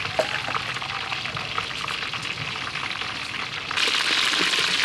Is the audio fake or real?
real